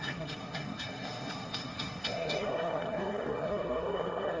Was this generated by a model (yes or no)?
yes